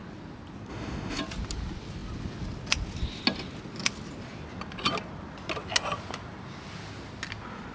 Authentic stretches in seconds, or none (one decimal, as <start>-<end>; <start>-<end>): 0.0-0.7; 1.2-7.7